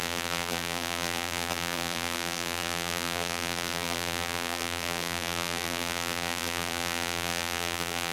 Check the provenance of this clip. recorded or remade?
remade